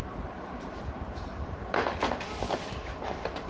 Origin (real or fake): fake